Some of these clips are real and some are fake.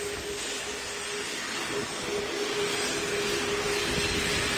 real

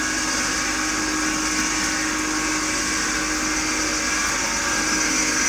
real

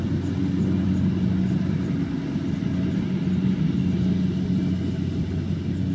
real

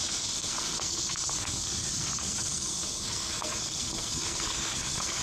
fake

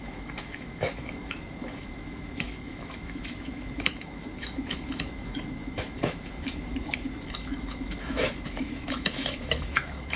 fake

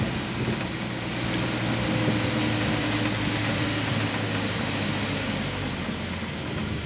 real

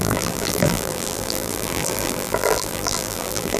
fake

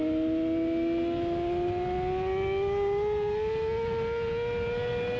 real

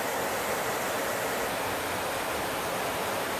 fake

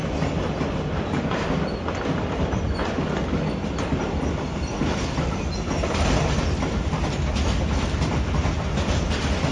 real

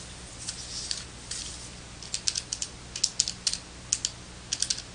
real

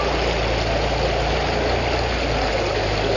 real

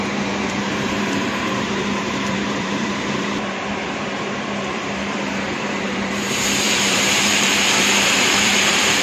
fake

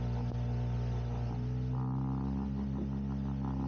real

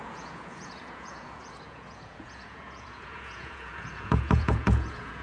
fake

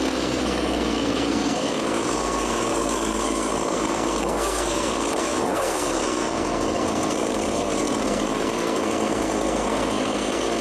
fake